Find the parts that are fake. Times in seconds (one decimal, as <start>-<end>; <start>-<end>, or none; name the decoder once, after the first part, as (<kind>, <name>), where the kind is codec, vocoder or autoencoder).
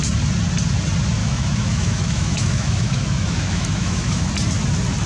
1.2-4.3 (autoencoder, DAC-VAE)